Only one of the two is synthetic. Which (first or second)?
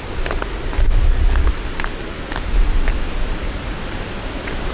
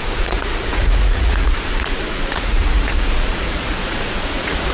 second